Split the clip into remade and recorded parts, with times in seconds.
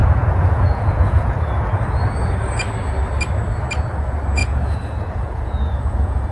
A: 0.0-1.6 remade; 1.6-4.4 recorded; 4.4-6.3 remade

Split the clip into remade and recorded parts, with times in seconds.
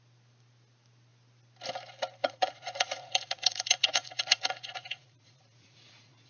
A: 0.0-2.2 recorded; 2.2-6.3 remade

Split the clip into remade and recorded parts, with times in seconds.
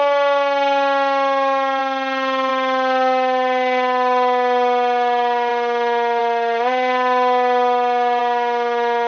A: 0.0-9.1 recorded